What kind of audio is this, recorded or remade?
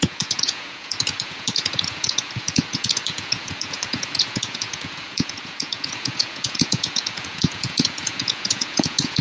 remade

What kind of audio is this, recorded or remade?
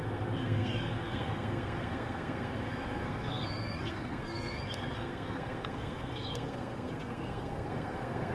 remade